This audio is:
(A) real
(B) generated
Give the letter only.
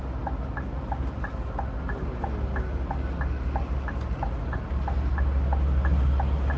A